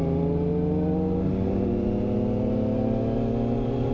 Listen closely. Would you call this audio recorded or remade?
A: recorded